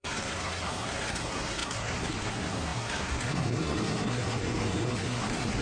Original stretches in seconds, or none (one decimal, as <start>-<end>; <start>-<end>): none